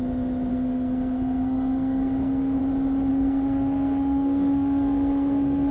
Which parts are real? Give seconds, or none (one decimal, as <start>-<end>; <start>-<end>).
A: 0.0-0.5; 2.6-3.1